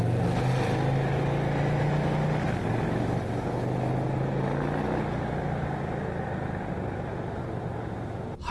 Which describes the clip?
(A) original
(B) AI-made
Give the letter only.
A